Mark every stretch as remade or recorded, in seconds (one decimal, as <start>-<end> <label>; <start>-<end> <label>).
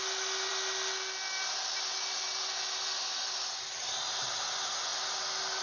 0.0-5.6 recorded